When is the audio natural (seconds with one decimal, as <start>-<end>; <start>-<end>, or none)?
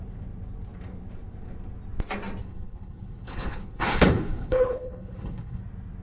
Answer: 0.0-2.4; 5.6-6.0